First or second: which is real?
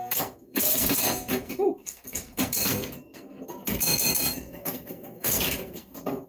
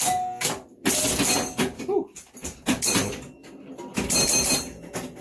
second